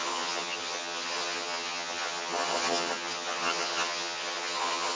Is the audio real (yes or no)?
no